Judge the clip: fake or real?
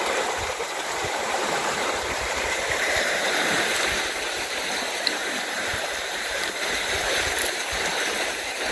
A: fake